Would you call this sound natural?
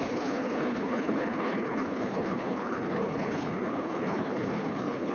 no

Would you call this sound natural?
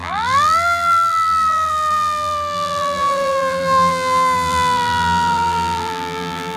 no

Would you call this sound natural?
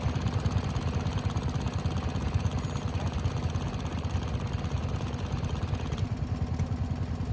yes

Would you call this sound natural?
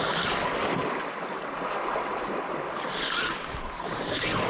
yes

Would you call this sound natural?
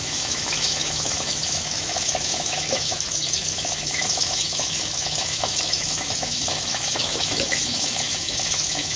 no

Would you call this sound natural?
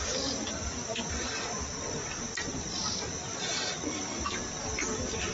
yes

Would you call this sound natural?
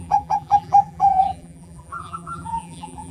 no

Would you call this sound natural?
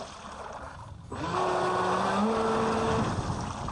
yes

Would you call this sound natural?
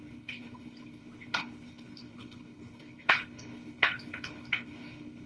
no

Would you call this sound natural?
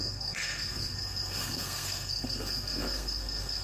no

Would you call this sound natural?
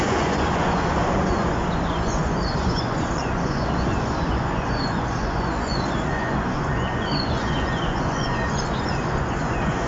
no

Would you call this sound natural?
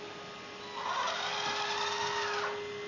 yes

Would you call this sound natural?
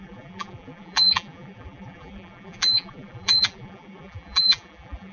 no